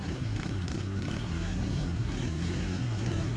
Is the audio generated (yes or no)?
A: yes